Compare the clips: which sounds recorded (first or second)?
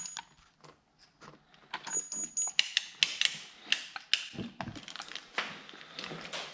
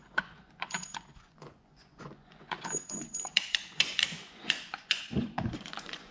first